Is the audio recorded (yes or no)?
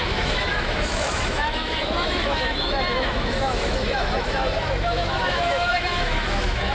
no